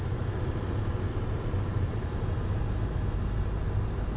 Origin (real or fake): real